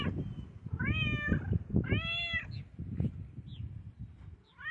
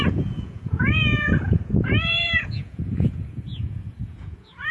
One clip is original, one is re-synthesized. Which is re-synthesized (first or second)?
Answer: second